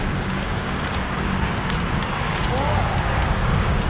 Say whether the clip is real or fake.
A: fake